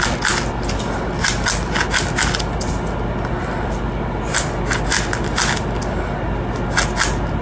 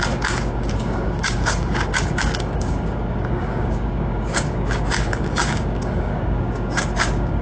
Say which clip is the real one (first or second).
first